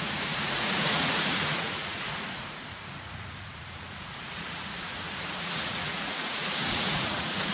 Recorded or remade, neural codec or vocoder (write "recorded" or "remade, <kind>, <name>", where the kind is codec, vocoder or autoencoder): remade, vocoder, Vocos